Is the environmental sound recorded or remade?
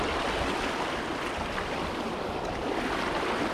recorded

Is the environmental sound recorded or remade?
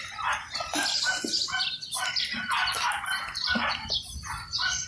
recorded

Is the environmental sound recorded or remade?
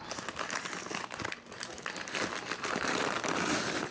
recorded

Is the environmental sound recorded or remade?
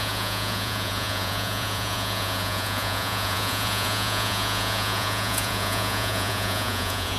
remade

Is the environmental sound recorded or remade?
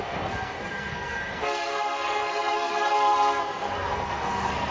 remade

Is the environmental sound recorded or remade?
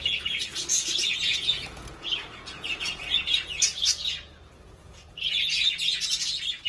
remade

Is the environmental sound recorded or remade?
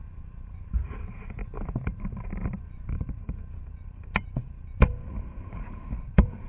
remade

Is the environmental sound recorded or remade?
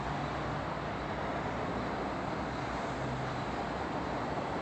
recorded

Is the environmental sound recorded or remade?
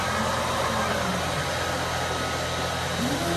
recorded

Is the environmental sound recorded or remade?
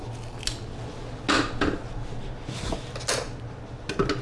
recorded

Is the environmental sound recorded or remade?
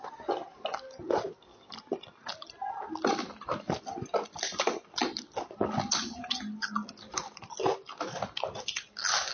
recorded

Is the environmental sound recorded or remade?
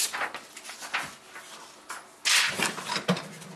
recorded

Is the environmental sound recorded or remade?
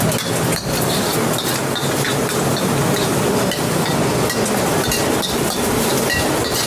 recorded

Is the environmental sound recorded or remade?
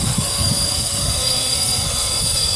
remade